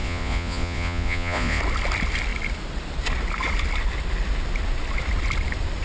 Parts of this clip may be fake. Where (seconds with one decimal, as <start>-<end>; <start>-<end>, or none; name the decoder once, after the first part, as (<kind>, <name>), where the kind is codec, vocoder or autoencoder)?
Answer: 0.0-1.6 (vocoder, Vocos)